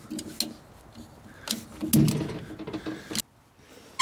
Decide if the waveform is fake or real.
real